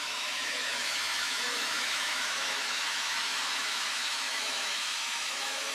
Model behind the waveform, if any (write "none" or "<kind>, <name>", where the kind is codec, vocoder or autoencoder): autoencoder, DAC-VAE